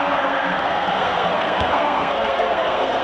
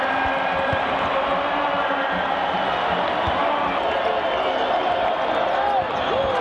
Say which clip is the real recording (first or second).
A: second